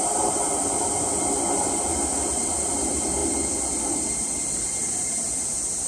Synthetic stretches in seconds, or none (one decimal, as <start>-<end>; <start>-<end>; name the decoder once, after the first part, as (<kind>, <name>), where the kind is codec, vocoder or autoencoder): none